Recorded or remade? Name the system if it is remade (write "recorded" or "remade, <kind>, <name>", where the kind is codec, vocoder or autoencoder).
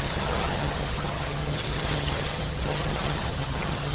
remade, vocoder, HiFi-GAN